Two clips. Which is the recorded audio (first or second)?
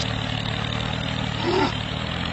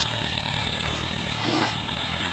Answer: first